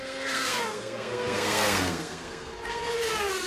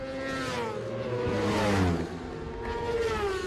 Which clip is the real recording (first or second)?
second